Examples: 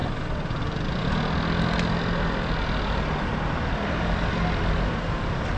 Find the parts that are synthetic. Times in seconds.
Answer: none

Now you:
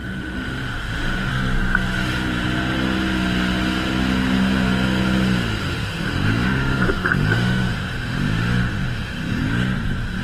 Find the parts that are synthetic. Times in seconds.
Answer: 0.0-1.3; 5.5-9.4